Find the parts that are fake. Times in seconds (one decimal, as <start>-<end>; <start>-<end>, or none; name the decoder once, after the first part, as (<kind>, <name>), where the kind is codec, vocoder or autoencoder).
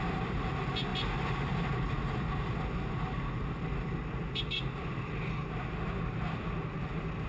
none